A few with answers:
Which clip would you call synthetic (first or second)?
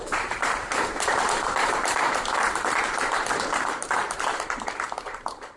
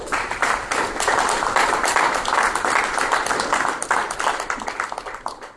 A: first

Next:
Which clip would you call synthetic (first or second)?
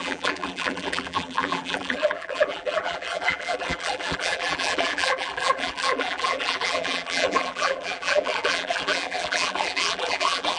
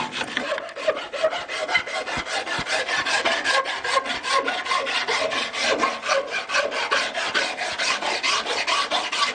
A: first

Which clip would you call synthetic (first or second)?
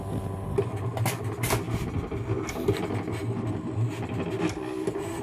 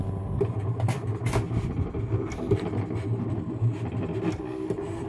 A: second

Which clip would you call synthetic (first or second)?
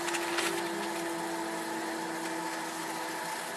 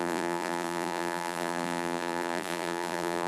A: second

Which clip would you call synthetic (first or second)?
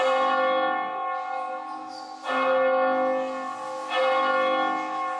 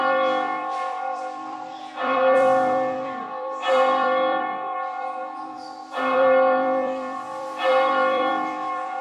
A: second